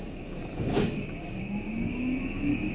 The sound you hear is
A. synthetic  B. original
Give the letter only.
A